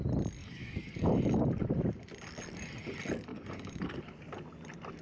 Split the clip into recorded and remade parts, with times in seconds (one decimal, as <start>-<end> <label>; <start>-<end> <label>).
0.0-0.4 recorded; 0.4-1.1 remade; 1.1-3.3 recorded; 3.3-4.0 remade; 4.0-5.0 recorded